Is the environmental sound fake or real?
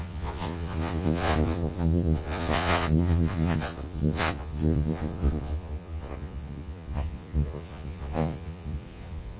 fake